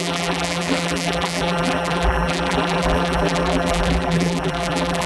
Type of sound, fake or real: fake